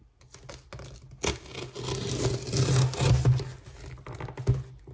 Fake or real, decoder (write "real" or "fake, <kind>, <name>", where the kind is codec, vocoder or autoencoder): real